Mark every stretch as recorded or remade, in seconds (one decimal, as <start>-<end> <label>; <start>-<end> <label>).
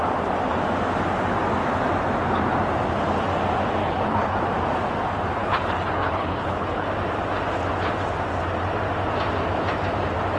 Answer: 0.0-3.8 recorded; 3.8-4.4 remade; 4.4-5.4 recorded; 5.4-6.9 remade; 6.9-10.4 recorded